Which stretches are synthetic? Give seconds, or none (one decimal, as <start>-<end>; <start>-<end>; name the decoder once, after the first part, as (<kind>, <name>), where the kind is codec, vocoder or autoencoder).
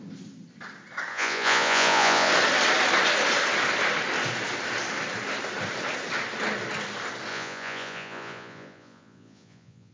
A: 1.1-2.3 (vocoder, Vocos); 7.3-9.9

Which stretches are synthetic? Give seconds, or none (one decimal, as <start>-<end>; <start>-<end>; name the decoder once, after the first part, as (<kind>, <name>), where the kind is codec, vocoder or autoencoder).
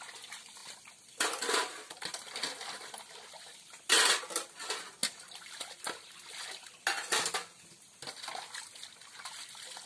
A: none